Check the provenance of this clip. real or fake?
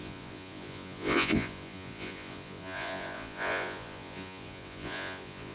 fake